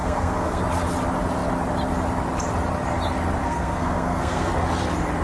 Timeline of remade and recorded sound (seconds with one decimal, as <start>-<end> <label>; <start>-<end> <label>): 0.0-0.6 remade; 0.6-3.4 recorded; 3.4-4.5 remade; 4.5-5.2 recorded